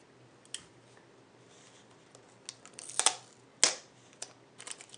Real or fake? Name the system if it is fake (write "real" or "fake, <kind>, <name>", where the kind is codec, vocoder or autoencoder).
real